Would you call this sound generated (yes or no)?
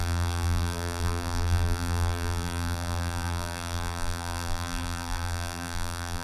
yes